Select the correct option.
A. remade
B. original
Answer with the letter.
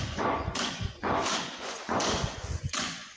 A